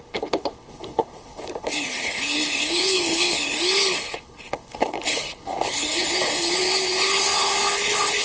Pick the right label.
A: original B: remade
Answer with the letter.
B